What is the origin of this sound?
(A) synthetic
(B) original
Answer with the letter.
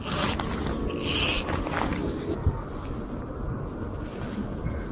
B